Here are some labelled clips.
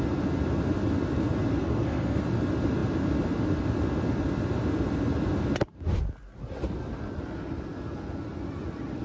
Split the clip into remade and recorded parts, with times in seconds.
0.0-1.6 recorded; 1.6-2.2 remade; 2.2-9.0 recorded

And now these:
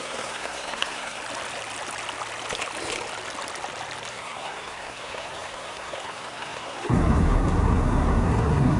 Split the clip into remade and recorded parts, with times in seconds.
0.0-1.2 remade; 1.2-4.1 recorded; 4.1-8.8 remade

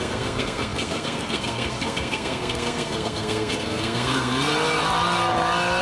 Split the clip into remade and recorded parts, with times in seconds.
0.0-4.5 remade; 4.5-5.8 recorded

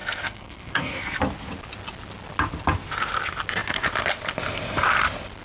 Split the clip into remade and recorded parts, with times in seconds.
0.0-1.2 remade; 1.2-5.4 recorded

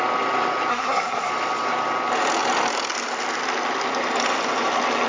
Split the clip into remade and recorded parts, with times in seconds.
0.0-0.7 recorded; 0.7-1.3 remade; 1.3-5.1 recorded